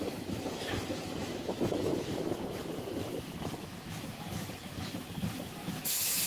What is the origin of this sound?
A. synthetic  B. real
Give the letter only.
A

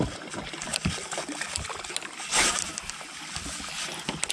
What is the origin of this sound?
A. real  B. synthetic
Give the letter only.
A